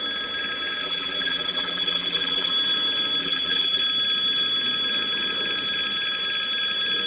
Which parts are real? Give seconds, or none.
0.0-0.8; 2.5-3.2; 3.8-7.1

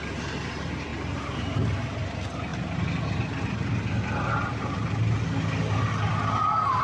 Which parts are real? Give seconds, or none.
0.0-6.8

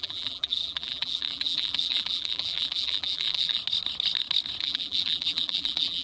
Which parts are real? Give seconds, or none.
3.6-4.6